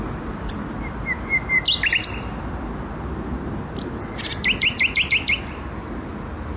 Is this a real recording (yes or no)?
yes